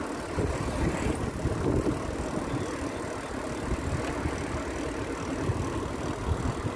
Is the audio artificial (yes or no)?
no